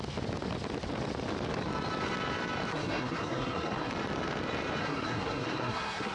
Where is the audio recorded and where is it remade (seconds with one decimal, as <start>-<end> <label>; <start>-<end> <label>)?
0.0-2.7 recorded; 2.7-3.9 remade; 3.9-4.8 recorded; 4.8-6.1 remade